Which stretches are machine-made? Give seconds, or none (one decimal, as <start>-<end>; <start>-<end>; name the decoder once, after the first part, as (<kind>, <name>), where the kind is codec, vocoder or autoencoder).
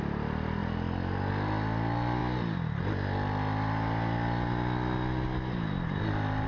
none